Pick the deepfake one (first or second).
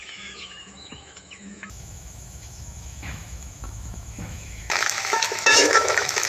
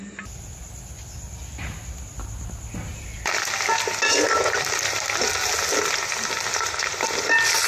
first